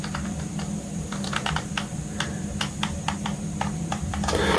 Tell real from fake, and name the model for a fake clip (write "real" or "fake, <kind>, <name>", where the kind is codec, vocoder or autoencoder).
fake, vocoder, BigVGAN v2